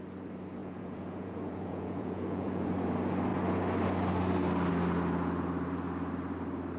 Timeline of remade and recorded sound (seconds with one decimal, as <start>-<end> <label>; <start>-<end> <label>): 0.0-0.6 recorded; 0.6-2.7 remade; 2.7-6.8 recorded